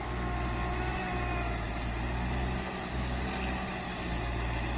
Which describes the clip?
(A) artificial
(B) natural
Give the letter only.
B